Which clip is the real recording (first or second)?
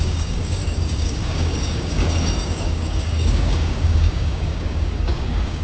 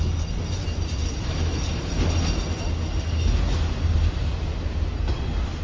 second